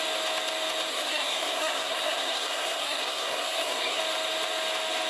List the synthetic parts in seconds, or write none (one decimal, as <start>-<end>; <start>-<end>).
0.9-4.0